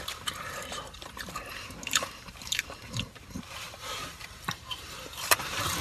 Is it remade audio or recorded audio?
remade